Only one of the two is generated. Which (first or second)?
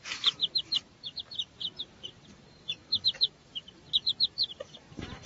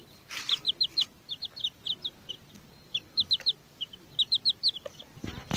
first